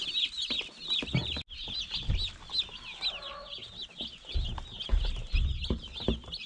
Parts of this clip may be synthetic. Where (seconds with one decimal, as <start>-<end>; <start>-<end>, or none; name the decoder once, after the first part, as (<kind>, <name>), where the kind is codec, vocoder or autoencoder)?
none